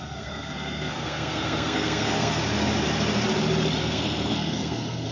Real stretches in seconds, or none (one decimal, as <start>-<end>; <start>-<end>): 2.4-3.8